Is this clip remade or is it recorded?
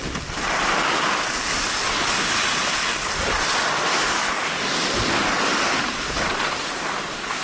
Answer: recorded